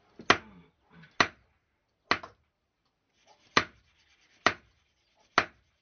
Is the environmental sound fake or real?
real